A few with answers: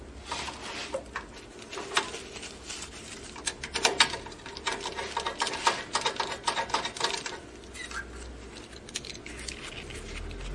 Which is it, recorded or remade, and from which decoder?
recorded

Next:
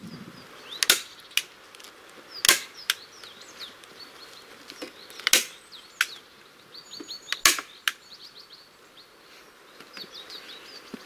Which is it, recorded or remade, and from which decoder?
recorded